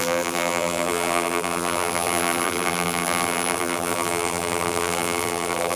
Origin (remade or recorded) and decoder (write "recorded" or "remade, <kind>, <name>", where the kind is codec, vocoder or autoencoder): remade, vocoder, BigVGAN v2